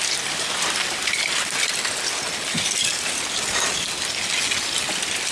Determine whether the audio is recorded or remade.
recorded